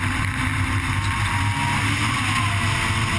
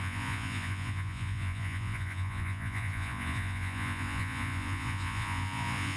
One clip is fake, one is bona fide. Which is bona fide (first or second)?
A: first